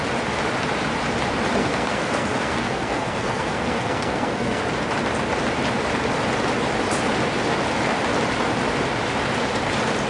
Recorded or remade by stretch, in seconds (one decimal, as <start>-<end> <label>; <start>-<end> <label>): 0.0-1.6 recorded; 1.6-4.6 remade; 4.6-10.1 recorded